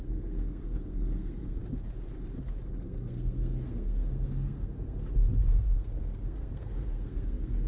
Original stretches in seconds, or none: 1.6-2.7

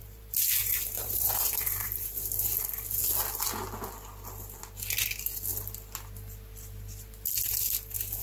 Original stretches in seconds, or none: 2.6-8.2

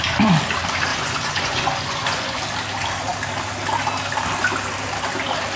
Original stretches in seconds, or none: 0.0-0.9; 2.4-5.6

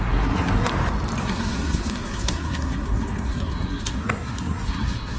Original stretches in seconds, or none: 0.7-1.2

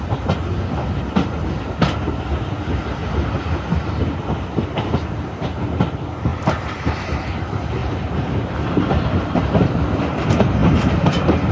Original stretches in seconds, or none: 0.0-6.3; 7.2-7.8; 8.4-10.6

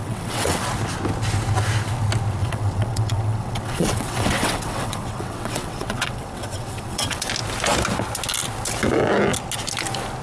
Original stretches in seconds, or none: 0.6-2.4; 7.3-10.2